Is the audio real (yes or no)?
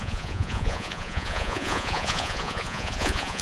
no